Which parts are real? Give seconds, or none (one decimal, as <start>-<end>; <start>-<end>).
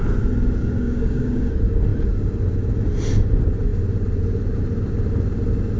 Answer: 0.0-0.6; 1.5-5.8